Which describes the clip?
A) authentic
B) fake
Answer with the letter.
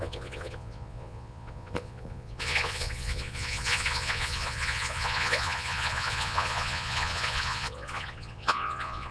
B